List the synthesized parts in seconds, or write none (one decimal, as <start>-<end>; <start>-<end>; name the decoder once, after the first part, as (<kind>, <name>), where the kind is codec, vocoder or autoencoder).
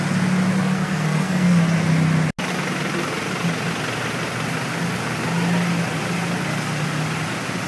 0.6-1.6 (codec, SNAC)